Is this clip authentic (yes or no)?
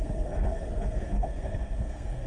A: no